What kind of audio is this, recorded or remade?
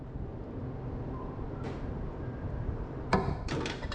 recorded